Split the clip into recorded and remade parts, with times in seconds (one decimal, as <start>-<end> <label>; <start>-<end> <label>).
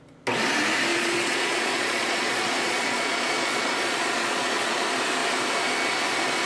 0.0-0.9 recorded; 0.9-4.8 remade; 4.8-6.5 recorded